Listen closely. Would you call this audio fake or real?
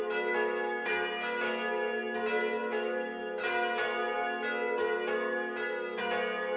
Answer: real